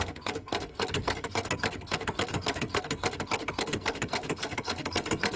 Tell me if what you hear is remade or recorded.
remade